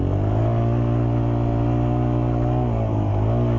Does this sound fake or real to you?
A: real